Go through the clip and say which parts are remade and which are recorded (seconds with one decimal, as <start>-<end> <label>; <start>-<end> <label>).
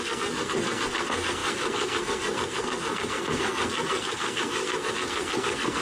0.0-5.8 remade